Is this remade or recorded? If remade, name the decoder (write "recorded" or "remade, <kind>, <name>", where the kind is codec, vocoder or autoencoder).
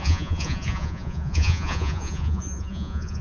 remade, vocoder, Vocos